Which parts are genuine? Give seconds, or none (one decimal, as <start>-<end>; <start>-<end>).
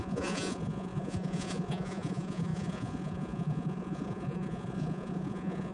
none